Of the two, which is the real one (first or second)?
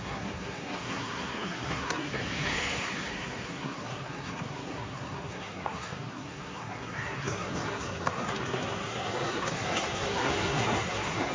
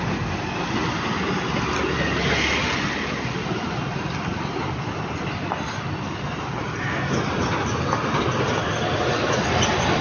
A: second